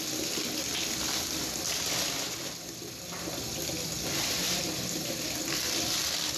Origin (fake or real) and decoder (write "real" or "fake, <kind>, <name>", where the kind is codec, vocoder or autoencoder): real